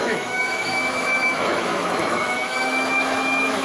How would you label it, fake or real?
fake